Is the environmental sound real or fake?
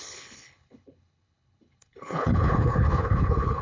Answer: fake